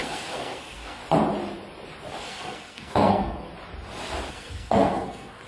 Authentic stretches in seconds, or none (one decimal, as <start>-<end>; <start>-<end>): 1.0-2.2; 3.5-4.3